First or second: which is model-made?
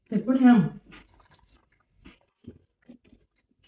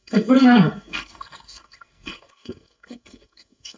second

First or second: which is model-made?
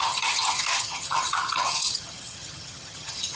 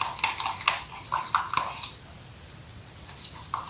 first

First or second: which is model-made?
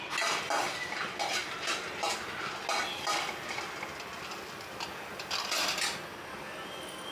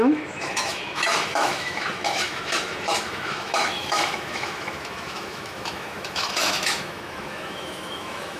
second